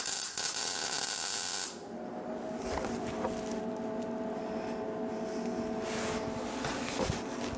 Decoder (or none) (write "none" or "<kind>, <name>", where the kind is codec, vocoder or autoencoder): none